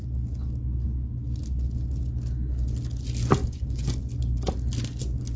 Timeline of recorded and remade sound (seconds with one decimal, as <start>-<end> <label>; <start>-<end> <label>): 0.0-3.4 recorded; 3.4-4.0 remade; 4.0-5.4 recorded